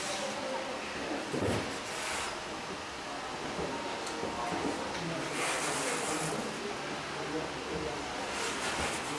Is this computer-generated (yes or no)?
no